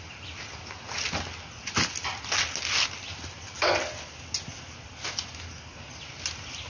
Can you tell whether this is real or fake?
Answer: real